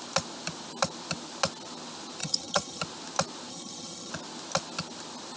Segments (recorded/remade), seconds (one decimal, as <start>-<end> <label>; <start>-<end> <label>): 0.0-2.2 recorded; 2.2-2.8 remade; 2.8-3.5 recorded; 3.5-4.1 remade; 4.1-5.4 recorded